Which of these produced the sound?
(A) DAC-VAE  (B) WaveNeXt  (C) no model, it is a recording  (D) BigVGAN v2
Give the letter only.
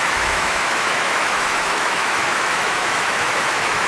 A